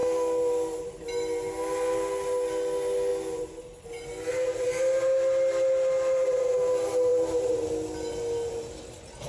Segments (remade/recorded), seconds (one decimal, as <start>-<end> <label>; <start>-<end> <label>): 0.0-9.3 recorded